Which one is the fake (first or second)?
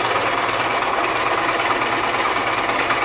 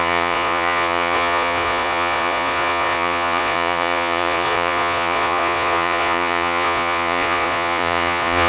second